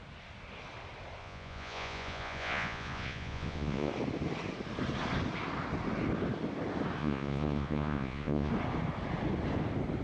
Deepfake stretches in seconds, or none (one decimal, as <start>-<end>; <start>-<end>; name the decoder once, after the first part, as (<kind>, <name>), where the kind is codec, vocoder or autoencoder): 1.2-3.9 (vocoder, Vocos); 7.0-8.5